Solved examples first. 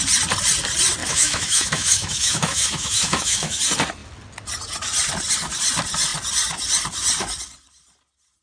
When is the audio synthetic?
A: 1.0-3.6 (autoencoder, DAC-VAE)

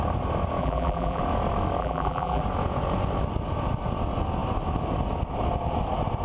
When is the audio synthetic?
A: 0.6-1.2 (vocoder, BigVGAN v2); 1.8-2.4

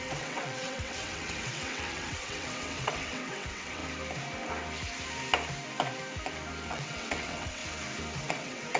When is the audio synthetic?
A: 0.0-3.8 (vocoder, WaveNeXt); 6.7-7.6; 8.3-8.8

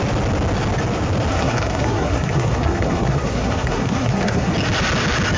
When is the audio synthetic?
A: 1.3-4.5 (codec, SNAC)